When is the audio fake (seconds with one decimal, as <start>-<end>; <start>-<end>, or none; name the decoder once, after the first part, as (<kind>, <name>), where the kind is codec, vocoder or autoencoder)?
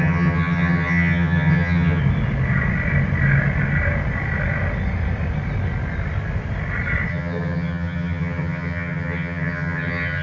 0.0-2.0 (vocoder, HiFi-GAN); 7.1-10.2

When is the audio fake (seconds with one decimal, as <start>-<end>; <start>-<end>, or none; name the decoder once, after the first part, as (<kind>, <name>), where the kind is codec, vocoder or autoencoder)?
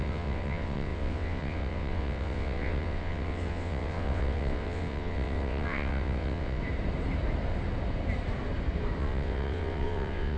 0.0-6.6 (vocoder, WaveNeXt); 9.0-10.4